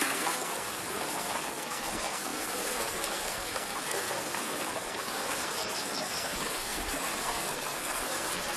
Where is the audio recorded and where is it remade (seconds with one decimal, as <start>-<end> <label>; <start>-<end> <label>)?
0.0-8.6 remade